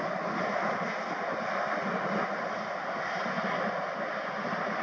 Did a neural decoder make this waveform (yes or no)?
no